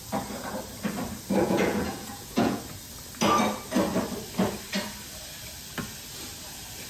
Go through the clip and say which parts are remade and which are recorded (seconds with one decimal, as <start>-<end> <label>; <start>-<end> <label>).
0.0-1.4 recorded; 1.4-2.6 remade; 2.6-6.9 recorded